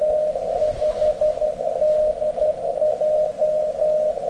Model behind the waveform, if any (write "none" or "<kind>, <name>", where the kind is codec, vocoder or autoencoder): none